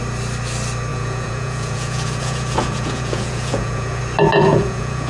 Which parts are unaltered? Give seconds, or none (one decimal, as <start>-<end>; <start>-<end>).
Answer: 0.0-0.9; 4.0-4.5